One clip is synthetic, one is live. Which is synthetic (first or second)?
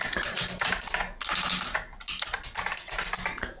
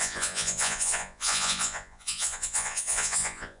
second